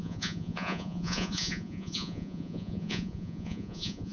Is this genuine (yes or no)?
no